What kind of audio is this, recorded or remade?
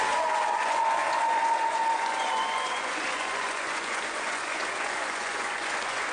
remade